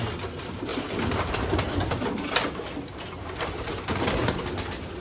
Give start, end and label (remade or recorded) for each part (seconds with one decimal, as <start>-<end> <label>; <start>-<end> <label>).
0.0-5.0 recorded